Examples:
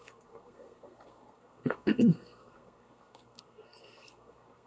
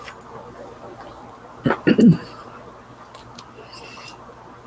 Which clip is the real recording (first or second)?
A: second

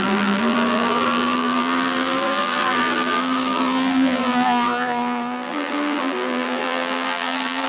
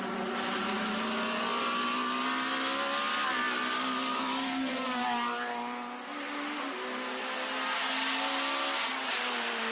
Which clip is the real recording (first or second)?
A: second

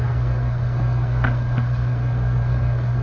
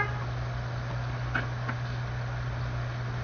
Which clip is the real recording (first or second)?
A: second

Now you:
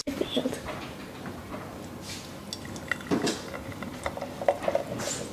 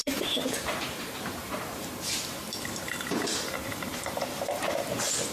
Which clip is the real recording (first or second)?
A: first